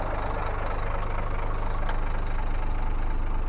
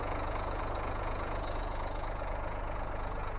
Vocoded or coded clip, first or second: second